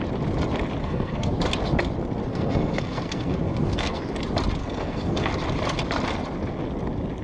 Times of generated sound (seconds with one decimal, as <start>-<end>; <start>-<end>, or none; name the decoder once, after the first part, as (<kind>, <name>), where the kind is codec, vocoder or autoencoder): 0.8-1.3 (codec, SNAC); 2.3-4.0; 4.6-5.3